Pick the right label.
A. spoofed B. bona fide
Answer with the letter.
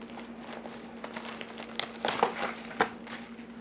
B